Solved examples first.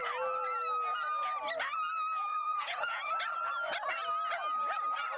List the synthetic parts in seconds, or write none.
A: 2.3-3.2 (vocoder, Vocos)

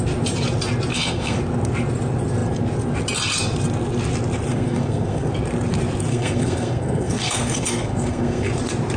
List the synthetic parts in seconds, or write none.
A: 0.9-1.4 (codec, SNAC); 4.5-5.3; 6.1-8.5

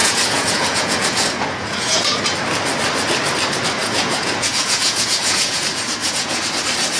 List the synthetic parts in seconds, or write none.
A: 0.0-2.2 (vocoder, Vocos); 3.8-5.6; 6.0-6.6

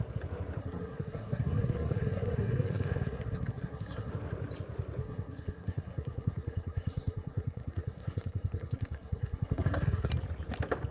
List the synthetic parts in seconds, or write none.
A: 0.6-4.1 (codec, SNAC); 5.0-10.1

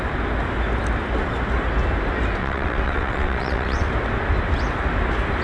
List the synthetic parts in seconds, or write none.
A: 2.4-3.9 (vocoder, WaveNeXt)

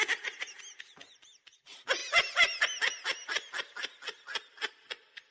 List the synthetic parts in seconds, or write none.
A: none

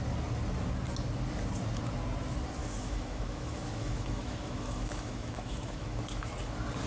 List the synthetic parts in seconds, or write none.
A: 2.6-6.3 (autoencoder, DAC-VAE)